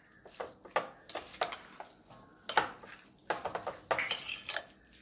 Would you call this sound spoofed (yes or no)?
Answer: no